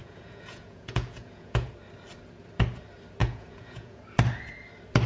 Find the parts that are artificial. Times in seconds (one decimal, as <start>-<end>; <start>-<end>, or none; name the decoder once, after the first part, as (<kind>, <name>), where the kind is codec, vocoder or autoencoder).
0.0-1.7 (vocoder, Vocos); 3.2-4.0